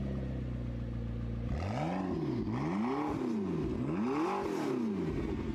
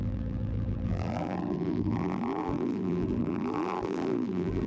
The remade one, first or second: second